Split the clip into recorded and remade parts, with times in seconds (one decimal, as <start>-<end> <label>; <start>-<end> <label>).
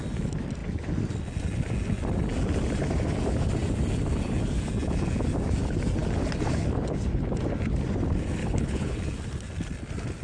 0.0-8.4 recorded; 8.4-9.0 remade; 9.0-10.2 recorded